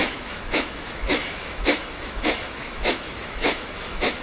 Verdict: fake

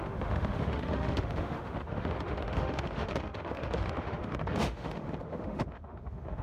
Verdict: fake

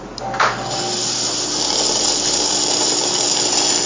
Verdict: real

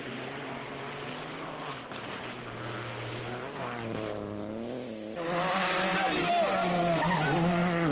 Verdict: real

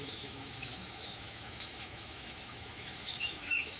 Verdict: fake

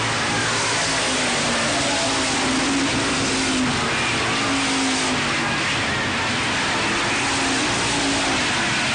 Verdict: real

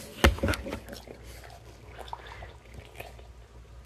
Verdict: real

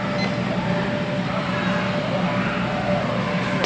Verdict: real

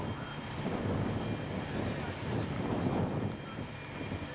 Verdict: real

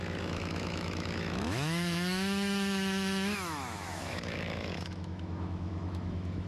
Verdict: fake